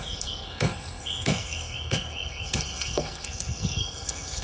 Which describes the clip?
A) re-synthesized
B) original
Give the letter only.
A